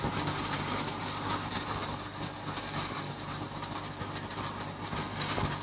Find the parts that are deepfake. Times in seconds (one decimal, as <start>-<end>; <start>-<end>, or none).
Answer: none